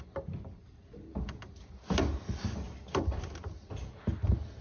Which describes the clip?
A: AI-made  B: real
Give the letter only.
B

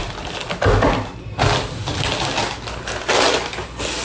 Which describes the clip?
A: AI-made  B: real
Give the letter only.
B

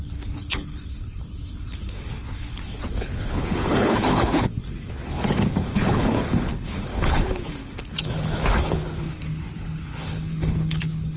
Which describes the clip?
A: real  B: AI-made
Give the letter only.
B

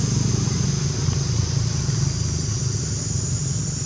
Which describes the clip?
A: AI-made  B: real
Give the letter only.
B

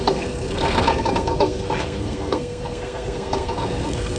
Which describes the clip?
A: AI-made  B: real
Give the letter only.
A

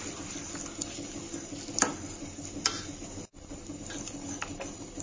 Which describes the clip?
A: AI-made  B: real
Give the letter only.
B